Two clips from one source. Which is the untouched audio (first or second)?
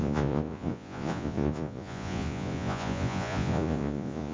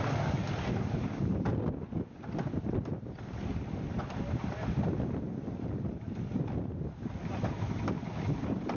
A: second